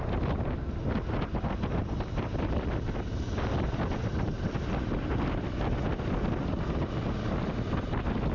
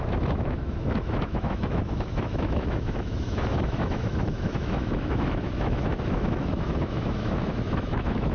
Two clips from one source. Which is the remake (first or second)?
second